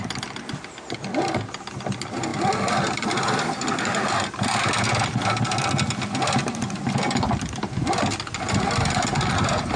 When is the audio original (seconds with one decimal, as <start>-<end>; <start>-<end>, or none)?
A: 0.0-9.8